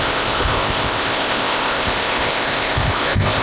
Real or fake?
fake